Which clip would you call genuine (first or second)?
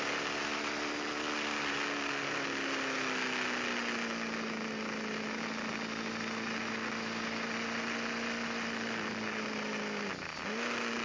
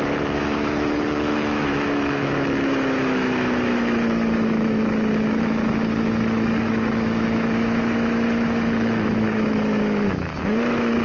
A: first